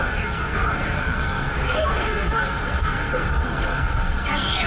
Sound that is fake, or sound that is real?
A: fake